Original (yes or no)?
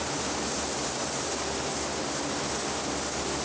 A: yes